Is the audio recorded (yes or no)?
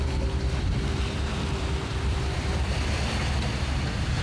no